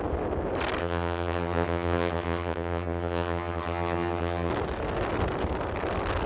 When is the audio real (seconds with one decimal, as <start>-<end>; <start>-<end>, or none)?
0.0-0.8; 4.5-6.3